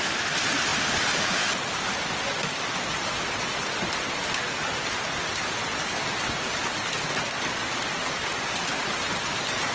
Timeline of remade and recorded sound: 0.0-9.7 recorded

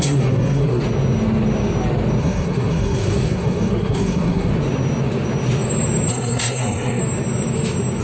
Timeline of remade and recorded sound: 0.0-0.8 remade; 0.8-2.2 recorded; 2.2-4.5 remade; 4.5-6.1 recorded; 6.1-7.0 remade; 7.0-8.0 recorded

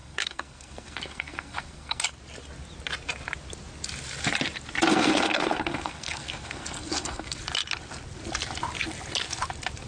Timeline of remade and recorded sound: 0.0-2.0 remade; 2.0-4.9 recorded; 4.9-7.4 remade; 7.4-9.9 recorded

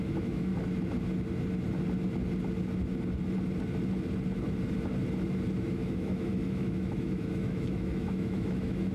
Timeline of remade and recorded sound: 0.0-0.5 remade; 0.5-5.6 recorded; 5.6-8.9 remade